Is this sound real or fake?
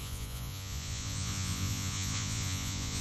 fake